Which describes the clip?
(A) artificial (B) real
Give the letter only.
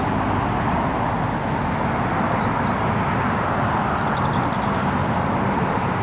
B